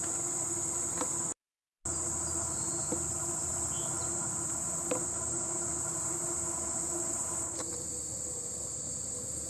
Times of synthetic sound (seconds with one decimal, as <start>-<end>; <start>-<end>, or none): none